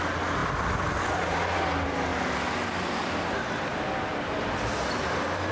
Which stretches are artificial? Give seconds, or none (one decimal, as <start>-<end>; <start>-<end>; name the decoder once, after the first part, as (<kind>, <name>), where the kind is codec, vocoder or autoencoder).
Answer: none